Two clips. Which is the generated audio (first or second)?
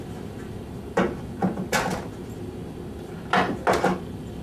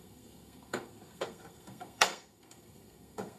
second